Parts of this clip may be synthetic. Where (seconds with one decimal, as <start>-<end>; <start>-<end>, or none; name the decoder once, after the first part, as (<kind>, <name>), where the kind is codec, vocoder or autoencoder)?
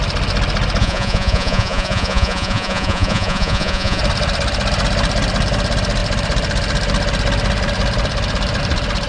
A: 0.8-4.0 (vocoder, Vocos)